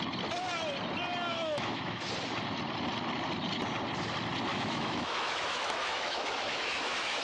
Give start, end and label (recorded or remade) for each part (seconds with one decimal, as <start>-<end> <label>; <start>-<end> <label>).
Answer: 0.0-1.3 recorded; 1.3-2.1 remade; 2.1-4.5 recorded; 4.5-7.2 remade